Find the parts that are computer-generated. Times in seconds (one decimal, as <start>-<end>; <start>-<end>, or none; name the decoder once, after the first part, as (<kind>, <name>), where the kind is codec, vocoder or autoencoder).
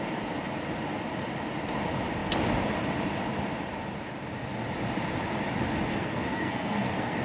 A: 5.9-7.2 (codec, SNAC)